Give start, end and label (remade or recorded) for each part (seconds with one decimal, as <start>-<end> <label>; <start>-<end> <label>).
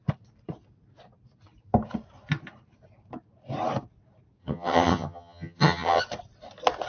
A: 0.0-4.4 recorded; 4.4-6.0 remade; 6.0-6.9 recorded